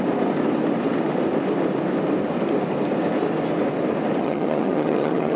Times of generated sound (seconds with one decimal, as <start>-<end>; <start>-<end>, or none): 4.2-5.4